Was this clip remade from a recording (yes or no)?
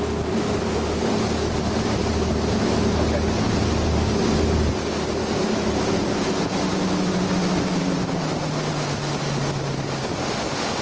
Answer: no